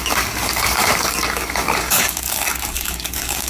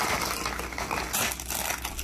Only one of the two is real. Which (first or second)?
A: second